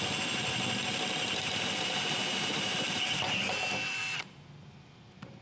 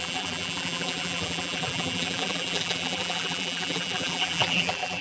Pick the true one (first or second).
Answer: first